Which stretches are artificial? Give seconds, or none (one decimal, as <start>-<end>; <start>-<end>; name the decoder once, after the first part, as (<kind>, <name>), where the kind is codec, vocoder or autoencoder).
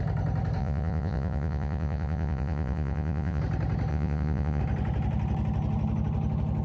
0.6-3.4 (vocoder, Vocos); 3.9-4.6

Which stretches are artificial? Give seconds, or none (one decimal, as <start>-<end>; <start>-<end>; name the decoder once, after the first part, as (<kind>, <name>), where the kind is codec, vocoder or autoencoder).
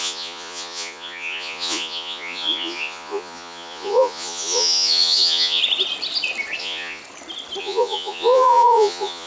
0.0-5.6 (vocoder, Vocos); 6.6-7.0; 7.6-9.3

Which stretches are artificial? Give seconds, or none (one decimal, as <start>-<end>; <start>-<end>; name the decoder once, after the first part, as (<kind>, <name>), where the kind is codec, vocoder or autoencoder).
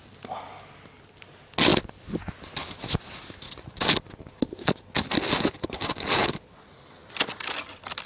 none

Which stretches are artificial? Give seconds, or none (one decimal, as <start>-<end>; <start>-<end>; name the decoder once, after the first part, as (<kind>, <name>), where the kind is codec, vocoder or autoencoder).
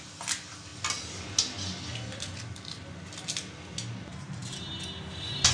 none